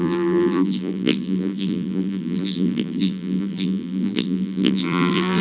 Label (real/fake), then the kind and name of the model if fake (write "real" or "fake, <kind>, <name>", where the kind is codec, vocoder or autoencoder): fake, vocoder, BigVGAN v2